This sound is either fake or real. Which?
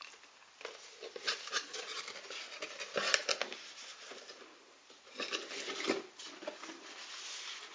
real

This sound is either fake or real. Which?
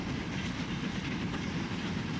real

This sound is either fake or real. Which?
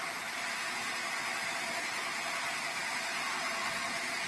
real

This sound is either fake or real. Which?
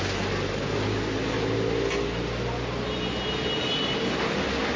real